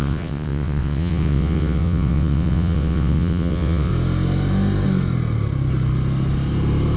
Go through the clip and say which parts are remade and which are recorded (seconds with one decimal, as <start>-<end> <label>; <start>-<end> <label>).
0.0-3.9 remade; 3.9-7.0 recorded